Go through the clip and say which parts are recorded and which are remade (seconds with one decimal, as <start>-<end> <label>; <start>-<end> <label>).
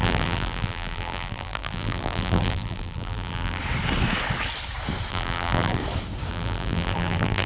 0.0-3.6 remade; 3.6-5.1 recorded; 5.1-5.8 remade; 5.8-6.3 recorded; 6.3-7.5 remade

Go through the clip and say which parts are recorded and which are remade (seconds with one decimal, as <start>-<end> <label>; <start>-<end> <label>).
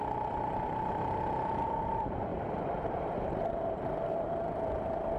0.0-2.3 recorded; 2.3-4.3 remade; 4.3-5.2 recorded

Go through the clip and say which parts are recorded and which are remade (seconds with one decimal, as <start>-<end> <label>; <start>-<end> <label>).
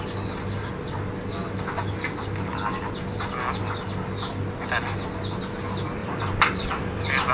0.0-6.0 recorded; 6.0-6.8 remade; 6.8-7.3 recorded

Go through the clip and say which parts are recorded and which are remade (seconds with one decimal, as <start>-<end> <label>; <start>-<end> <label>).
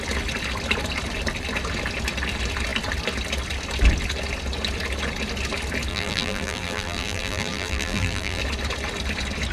0.0-5.9 recorded; 5.9-8.4 remade; 8.4-9.5 recorded